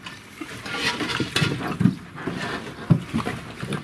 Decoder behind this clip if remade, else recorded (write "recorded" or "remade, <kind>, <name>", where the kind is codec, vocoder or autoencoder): recorded